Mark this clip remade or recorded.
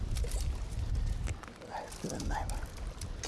recorded